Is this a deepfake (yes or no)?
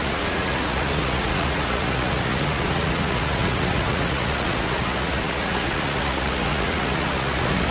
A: yes